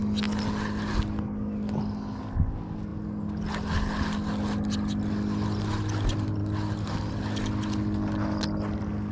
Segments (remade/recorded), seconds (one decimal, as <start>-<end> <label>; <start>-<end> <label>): 0.0-9.1 recorded